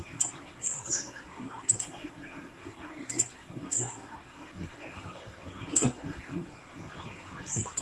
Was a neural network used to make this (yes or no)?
yes